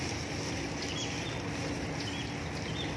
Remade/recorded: recorded